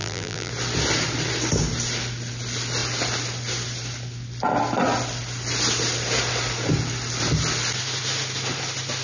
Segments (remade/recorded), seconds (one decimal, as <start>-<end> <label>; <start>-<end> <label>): 0.0-0.5 remade; 0.5-9.0 recorded